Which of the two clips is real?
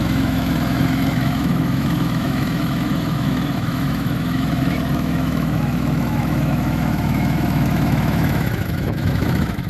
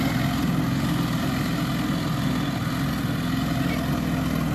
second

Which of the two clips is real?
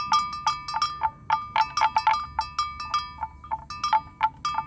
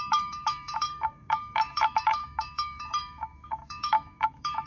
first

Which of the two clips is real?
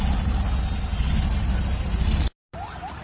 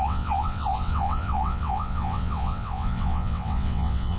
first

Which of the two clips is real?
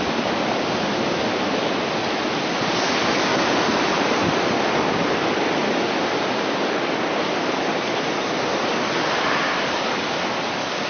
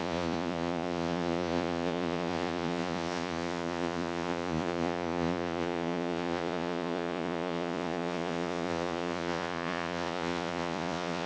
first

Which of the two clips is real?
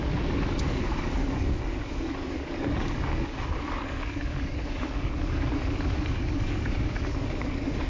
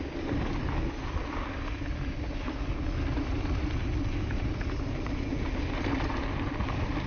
second